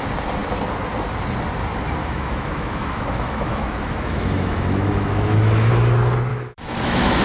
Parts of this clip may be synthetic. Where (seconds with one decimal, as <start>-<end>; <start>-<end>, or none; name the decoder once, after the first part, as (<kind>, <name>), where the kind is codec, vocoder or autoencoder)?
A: 2.0-5.7 (autoencoder, DAC-VAE); 6.3-7.2